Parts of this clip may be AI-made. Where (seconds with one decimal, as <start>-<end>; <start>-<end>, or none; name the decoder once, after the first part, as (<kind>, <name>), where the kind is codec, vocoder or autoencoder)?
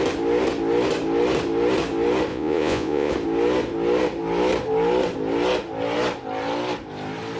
2.3-3.1 (vocoder, Vocos)